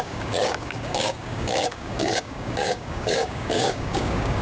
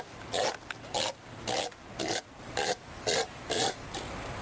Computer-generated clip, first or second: first